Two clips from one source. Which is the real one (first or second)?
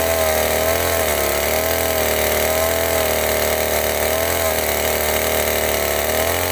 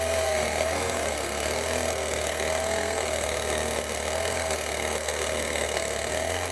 first